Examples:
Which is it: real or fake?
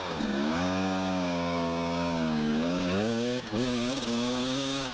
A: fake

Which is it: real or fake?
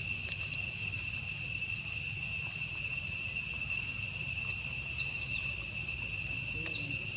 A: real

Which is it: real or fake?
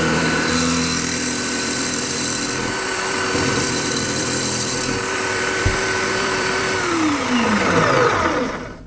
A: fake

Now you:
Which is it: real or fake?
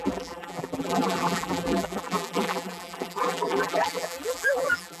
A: fake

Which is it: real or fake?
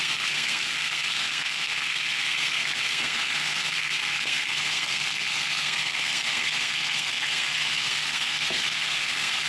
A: fake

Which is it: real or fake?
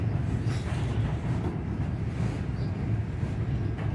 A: real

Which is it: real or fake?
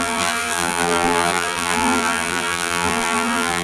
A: fake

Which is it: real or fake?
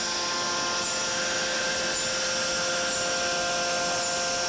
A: real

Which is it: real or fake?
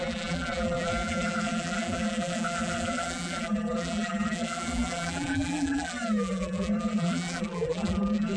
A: fake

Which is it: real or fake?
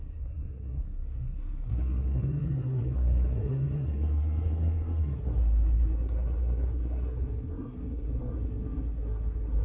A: fake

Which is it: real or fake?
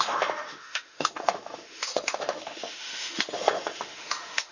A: fake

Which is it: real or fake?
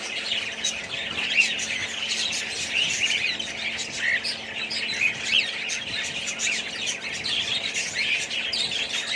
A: real